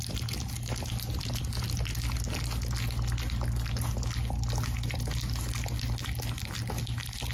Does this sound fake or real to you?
real